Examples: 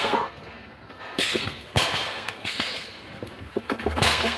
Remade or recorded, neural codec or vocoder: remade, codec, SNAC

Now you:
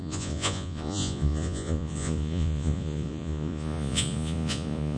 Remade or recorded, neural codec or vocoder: remade, vocoder, Vocos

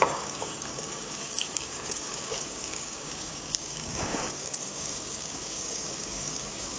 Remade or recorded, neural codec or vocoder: remade, codec, DAC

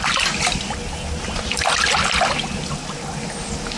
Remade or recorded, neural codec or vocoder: recorded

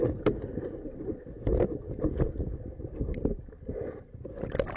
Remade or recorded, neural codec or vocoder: recorded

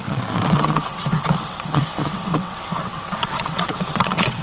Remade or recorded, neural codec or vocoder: remade, vocoder, WaveNeXt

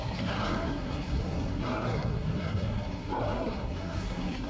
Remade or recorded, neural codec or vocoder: remade, codec, SNAC